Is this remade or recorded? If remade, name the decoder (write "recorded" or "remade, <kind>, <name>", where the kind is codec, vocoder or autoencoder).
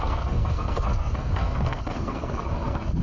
remade, codec, SNAC